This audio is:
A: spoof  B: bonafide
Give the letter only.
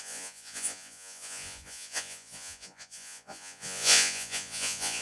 A